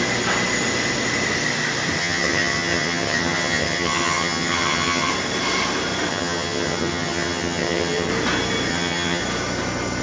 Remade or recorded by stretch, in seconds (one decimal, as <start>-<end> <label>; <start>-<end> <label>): 0.0-2.0 recorded; 2.0-5.1 remade; 5.1-6.1 recorded; 6.1-8.1 remade; 8.1-8.7 recorded; 8.7-9.2 remade; 9.2-10.0 recorded